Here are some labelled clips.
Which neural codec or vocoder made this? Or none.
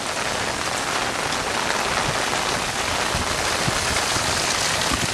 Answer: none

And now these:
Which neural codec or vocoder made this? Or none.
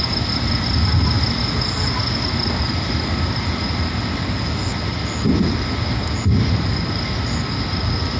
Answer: none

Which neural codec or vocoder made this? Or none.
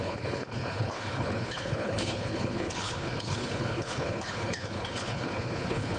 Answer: codec, HILCodec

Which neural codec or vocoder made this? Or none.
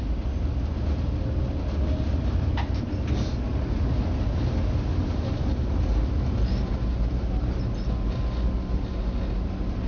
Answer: none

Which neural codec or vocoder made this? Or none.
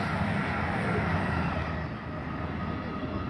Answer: none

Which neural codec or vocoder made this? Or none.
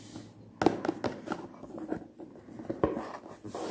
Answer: none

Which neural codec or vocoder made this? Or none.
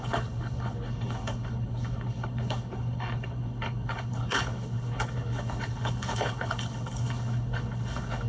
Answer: codec, HILCodec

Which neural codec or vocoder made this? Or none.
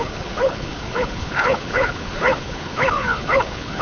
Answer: codec, HILCodec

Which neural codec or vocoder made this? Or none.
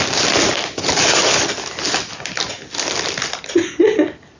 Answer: none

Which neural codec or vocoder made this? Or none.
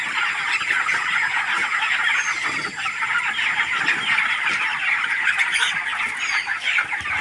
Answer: none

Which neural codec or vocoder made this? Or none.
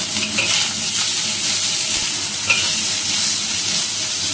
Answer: none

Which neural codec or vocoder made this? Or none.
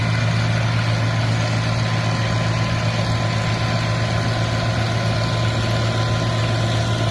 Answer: none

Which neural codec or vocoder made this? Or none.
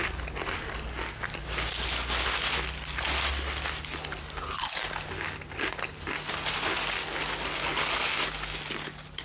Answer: none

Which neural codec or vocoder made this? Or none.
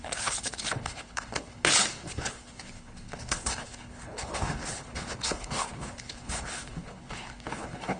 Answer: codec, HILCodec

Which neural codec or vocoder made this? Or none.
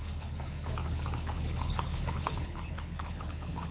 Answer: codec, HILCodec